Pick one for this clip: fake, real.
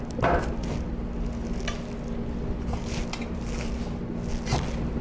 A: real